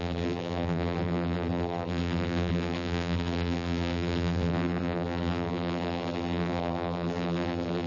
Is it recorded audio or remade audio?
remade